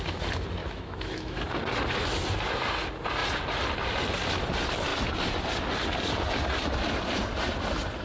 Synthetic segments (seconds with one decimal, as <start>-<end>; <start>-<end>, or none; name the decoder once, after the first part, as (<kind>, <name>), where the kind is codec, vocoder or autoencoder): 0.6-1.4 (autoencoder, DAC-VAE)